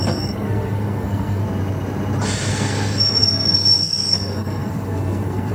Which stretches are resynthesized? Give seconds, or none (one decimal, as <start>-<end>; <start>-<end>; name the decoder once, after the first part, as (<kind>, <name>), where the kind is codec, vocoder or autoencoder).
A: 0.0-1.4 (codec, SNAC); 2.5-5.5